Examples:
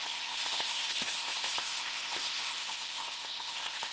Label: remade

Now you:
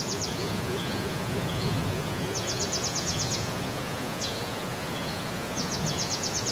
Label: remade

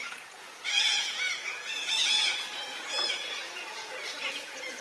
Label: remade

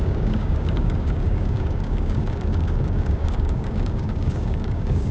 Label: remade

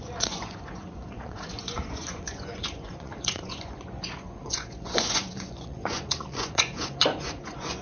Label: remade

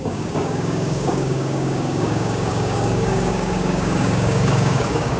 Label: remade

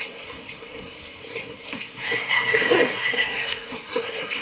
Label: remade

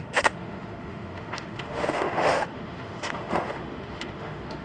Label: remade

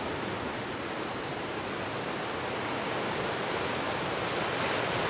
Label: recorded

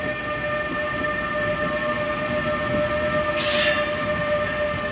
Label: recorded